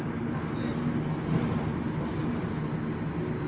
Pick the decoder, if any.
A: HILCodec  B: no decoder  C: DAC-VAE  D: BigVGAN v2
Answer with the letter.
B